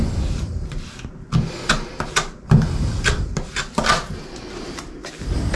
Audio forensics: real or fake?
real